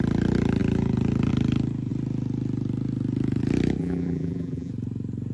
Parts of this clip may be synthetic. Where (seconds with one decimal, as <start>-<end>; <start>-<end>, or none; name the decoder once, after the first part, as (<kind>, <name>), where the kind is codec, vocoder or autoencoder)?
3.8-4.7 (vocoder, BigVGAN v2)